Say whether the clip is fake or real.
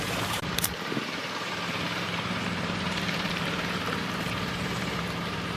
fake